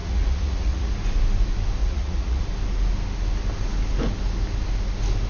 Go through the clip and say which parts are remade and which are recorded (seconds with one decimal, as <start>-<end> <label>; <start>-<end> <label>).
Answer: 0.0-0.9 remade; 0.9-1.8 recorded; 1.8-2.4 remade; 2.4-5.3 recorded